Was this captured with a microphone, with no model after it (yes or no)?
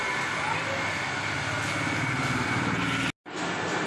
yes